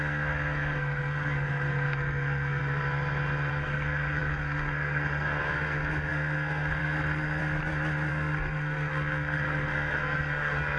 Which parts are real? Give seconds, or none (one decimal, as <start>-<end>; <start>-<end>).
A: 2.6-3.5; 7.4-8.1